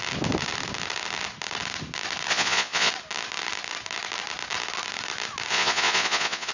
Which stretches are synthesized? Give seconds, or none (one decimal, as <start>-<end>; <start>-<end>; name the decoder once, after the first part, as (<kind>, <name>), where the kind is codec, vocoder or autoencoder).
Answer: 2.3-2.9 (vocoder, Vocos); 5.5-6.5